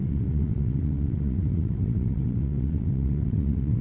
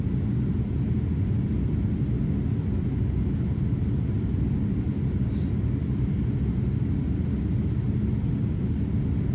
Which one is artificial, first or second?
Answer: first